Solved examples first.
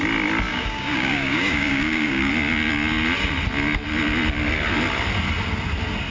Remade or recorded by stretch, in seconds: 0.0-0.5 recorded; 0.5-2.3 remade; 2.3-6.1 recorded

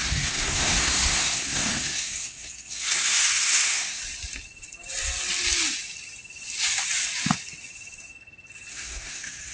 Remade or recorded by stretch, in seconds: 0.0-4.0 remade; 4.0-8.7 recorded; 8.7-9.5 remade

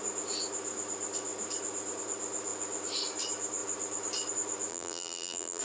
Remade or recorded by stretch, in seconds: 0.0-4.7 recorded; 4.7-5.6 remade

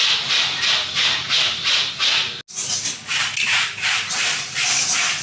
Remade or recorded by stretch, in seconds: 0.0-5.2 recorded

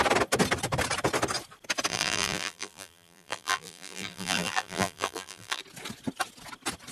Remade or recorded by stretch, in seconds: 0.0-1.9 recorded; 1.9-5.6 remade; 5.6-6.9 recorded

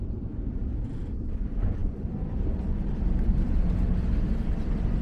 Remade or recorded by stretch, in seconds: 0.0-1.8 recorded; 1.8-5.0 remade

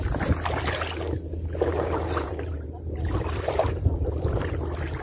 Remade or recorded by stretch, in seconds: 0.0-1.7 recorded; 1.7-4.5 remade; 4.5-5.0 recorded